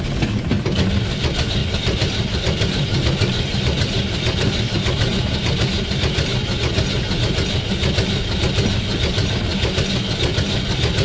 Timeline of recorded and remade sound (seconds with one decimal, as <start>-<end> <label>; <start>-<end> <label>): 0.0-1.6 recorded; 1.6-5.8 remade; 5.8-11.0 recorded